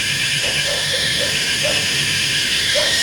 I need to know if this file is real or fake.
fake